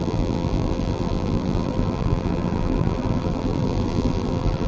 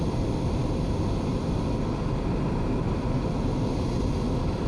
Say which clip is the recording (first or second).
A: second